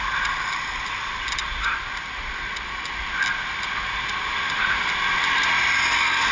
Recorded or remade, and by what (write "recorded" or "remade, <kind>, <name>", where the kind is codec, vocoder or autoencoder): recorded